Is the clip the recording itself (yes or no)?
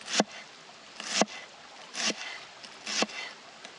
yes